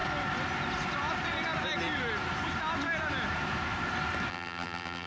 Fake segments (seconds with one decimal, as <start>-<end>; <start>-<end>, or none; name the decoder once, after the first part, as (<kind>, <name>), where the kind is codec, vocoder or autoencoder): 4.3-5.1 (vocoder, BigVGAN v2)